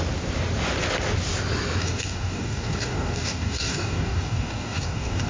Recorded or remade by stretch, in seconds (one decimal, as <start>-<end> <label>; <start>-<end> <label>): 0.0-1.8 recorded; 1.8-5.3 remade